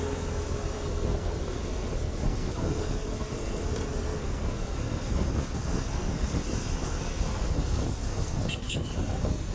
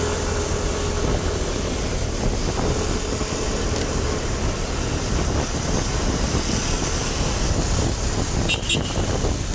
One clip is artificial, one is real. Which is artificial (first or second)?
first